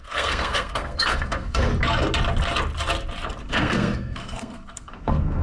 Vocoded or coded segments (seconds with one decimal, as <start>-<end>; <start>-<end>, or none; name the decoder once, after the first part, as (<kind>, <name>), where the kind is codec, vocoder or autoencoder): 0.0-1.7 (codec, SNAC); 3.5-5.4